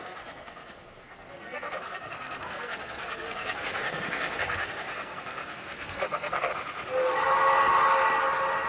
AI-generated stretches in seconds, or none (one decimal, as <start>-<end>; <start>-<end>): 0.0-6.5

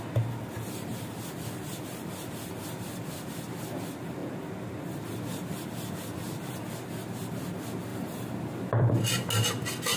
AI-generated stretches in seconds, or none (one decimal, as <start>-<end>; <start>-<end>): 7.9-8.9

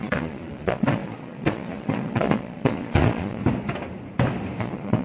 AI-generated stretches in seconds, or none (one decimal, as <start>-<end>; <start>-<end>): 0.0-3.4; 4.6-5.0

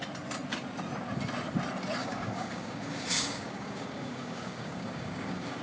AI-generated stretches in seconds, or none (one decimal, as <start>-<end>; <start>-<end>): 2.0-5.6

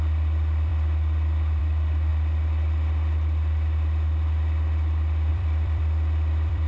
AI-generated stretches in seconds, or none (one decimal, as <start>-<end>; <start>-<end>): 0.0-0.7; 1.6-2.1; 5.3-6.7

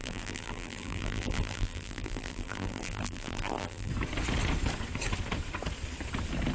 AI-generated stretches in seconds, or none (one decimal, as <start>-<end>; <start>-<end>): 0.0-3.9

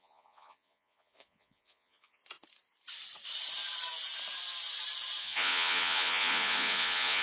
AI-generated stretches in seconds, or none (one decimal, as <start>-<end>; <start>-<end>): 0.0-2.2; 5.2-7.2